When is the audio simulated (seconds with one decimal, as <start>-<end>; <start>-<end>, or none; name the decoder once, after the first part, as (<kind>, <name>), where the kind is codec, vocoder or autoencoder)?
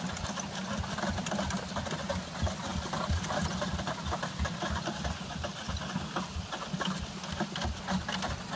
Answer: none